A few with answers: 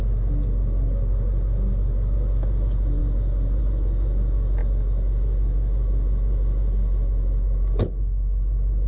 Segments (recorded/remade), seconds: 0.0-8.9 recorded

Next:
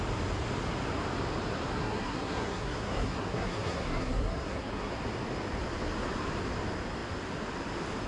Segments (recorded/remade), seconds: 0.0-1.7 recorded; 1.7-4.9 remade; 4.9-8.1 recorded